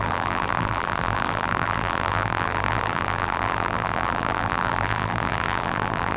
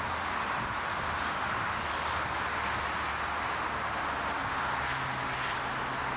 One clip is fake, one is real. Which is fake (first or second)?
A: first